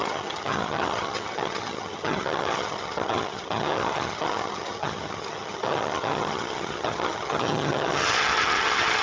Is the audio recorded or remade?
remade